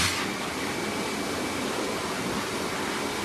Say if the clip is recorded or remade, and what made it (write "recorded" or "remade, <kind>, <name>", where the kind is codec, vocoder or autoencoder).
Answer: recorded